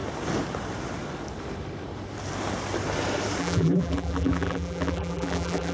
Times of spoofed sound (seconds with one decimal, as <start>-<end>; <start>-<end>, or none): 3.4-5.7